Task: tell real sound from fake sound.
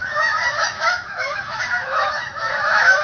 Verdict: fake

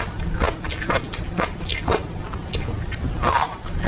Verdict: real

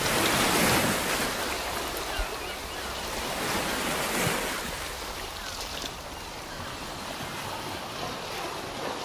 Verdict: real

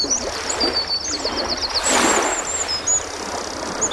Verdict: real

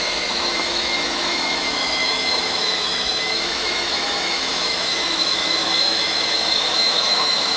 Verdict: fake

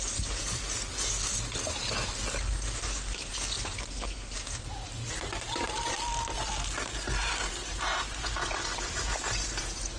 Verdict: real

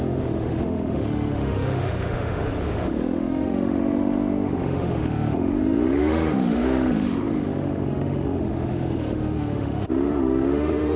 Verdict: fake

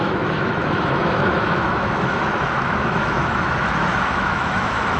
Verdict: fake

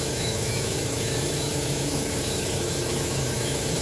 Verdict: fake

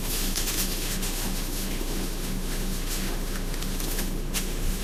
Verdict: fake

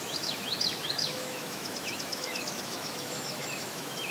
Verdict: fake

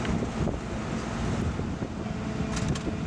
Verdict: real